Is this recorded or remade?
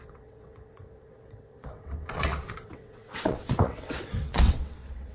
remade